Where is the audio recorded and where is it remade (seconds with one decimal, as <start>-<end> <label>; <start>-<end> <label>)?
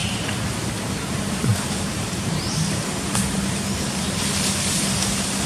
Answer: 0.0-1.5 recorded; 1.5-2.8 remade; 2.8-5.5 recorded